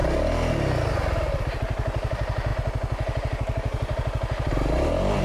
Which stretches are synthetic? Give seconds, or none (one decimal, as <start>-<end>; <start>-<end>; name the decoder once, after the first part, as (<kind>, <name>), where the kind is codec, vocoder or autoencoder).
none